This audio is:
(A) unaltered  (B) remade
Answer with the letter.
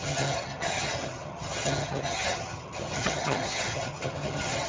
B